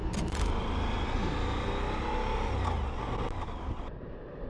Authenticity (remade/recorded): recorded